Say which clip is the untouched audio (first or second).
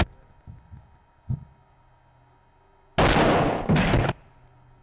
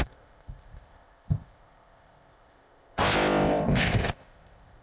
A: first